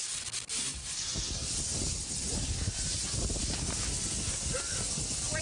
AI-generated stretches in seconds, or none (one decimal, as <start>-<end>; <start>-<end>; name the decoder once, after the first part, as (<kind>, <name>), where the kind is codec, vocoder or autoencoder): none